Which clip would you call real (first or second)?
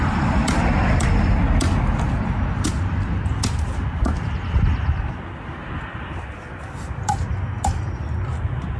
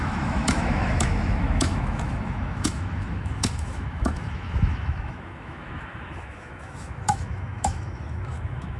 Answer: first